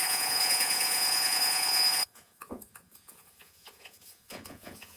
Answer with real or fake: fake